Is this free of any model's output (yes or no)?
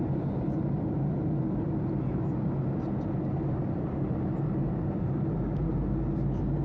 yes